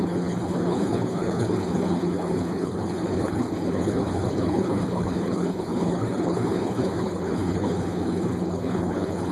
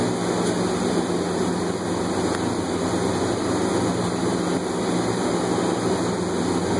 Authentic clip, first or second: second